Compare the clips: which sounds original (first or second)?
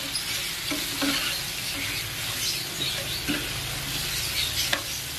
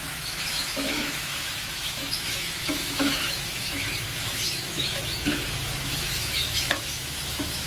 first